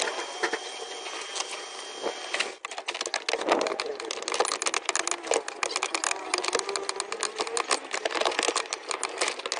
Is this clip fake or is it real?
real